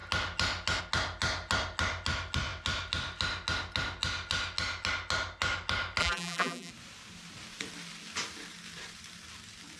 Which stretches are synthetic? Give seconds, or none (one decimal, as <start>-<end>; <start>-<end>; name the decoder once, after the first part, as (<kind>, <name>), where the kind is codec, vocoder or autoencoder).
6.0-6.7 (vocoder, BigVGAN v2)